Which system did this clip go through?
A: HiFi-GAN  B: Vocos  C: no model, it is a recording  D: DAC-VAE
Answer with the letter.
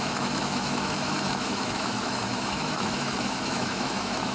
D